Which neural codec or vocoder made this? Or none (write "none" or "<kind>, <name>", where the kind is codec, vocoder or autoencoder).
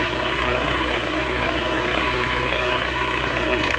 codec, SNAC